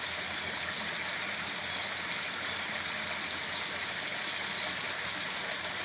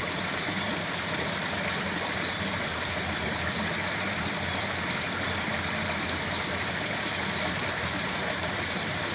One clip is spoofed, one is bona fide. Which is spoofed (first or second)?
second